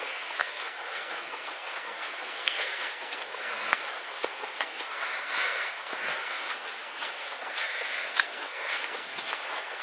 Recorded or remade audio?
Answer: remade